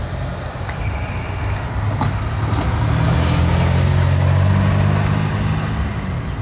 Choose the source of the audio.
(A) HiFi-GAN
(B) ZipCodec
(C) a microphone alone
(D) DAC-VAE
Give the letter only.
C